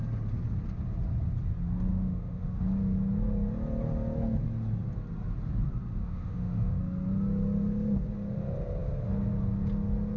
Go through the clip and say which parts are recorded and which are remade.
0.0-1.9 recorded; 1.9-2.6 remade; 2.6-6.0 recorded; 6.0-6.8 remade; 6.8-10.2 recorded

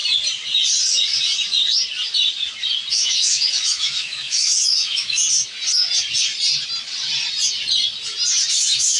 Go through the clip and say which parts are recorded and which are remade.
0.0-2.9 recorded; 2.9-5.2 remade; 5.2-8.5 recorded; 8.5-9.0 remade

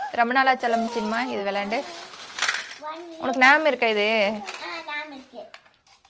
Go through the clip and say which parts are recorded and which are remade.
0.0-6.1 recorded

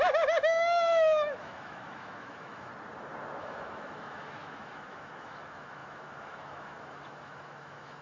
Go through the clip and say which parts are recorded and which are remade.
0.0-2.7 remade; 2.7-3.4 recorded; 3.4-8.0 remade

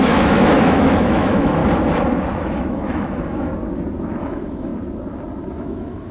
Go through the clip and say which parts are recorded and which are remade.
0.0-1.6 remade; 1.6-2.4 recorded; 2.4-3.5 remade; 3.5-4.2 recorded; 4.2-4.7 remade; 4.7-5.5 recorded; 5.5-6.1 remade

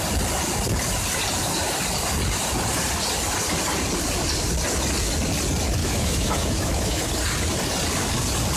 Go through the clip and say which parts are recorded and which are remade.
0.0-5.8 recorded; 5.8-7.0 remade; 7.0-8.6 recorded

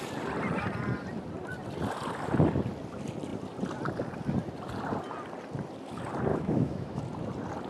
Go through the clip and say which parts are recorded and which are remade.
0.0-6.3 recorded; 6.3-7.0 remade; 7.0-7.7 recorded

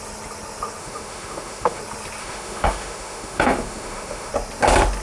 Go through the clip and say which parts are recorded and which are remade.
0.0-0.8 recorded; 0.8-1.8 remade; 1.8-2.2 recorded; 2.2-4.3 remade; 4.3-5.0 recorded